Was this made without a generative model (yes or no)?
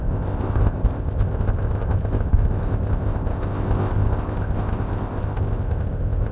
no